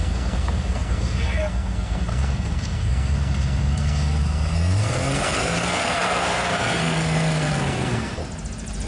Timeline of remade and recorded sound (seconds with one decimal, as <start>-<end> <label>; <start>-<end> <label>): 0.0-8.2 remade; 8.2-8.9 recorded